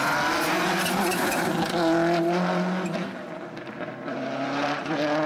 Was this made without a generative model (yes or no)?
yes